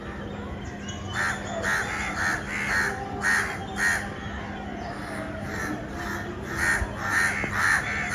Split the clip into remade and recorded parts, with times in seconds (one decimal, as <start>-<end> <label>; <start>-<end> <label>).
0.0-8.1 recorded